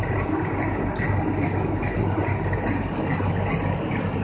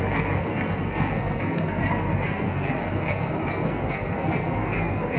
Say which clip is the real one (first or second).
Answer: first